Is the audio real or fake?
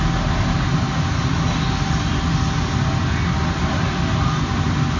real